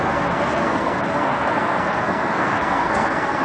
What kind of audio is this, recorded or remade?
remade